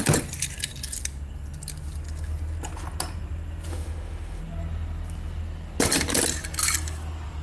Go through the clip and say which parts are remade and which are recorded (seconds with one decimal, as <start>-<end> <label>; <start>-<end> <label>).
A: 0.0-3.7 recorded; 3.7-4.4 remade; 4.4-7.4 recorded